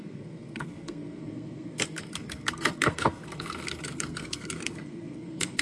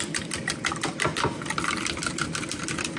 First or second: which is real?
second